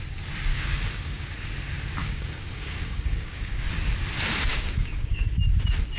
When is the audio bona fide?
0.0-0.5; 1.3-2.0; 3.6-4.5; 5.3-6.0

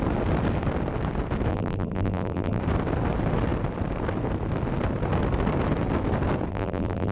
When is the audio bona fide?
0.0-1.5; 2.6-6.5

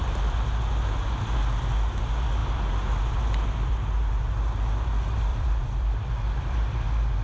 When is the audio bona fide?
0.0-5.3; 6.1-7.2

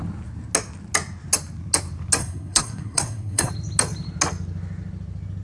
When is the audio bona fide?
0.0-2.2; 3.5-5.4